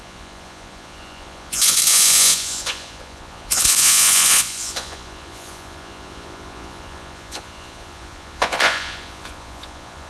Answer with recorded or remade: remade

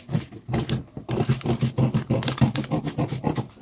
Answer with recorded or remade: recorded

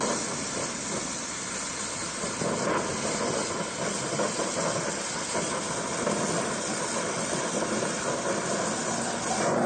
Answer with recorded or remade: recorded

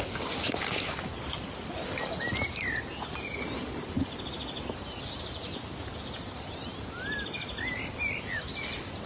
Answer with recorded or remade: recorded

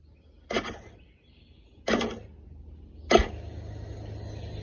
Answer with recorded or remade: recorded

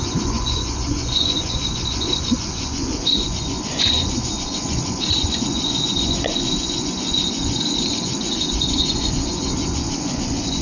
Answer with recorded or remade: remade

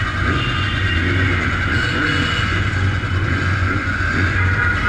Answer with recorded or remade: remade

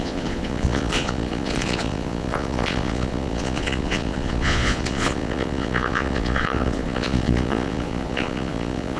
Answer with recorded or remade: remade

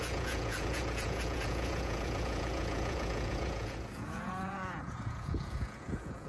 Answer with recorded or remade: remade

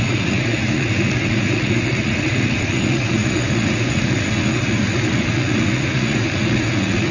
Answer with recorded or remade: remade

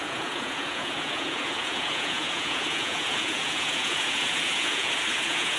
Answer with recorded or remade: remade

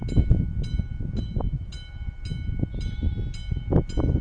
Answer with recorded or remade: recorded